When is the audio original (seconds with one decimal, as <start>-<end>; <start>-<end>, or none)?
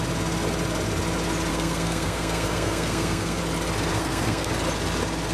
0.0-1.5; 3.4-3.9; 4.5-5.3